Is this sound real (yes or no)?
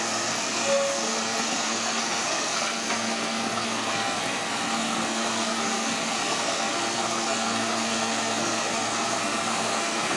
no